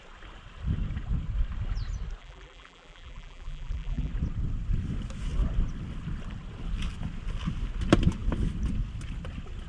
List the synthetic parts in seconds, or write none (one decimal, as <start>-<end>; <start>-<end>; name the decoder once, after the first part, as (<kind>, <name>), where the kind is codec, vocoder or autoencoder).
2.2-4.1 (vocoder, BigVGAN v2)